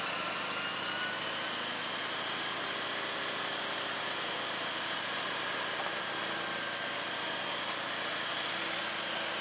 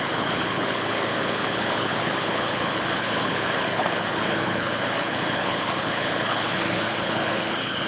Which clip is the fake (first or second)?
second